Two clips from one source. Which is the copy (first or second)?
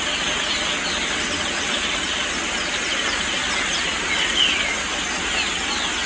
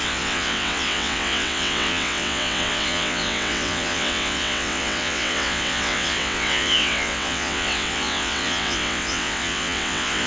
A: second